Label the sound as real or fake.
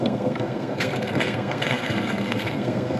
fake